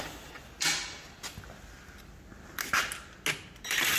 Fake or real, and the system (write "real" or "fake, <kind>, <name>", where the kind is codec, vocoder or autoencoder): real